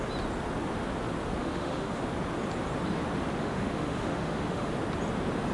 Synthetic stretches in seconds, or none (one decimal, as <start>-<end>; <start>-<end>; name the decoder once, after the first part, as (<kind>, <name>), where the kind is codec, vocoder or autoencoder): 1.4-2.0 (autoencoder, DAC-VAE); 3.4-4.7